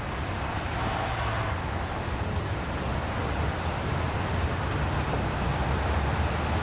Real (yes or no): yes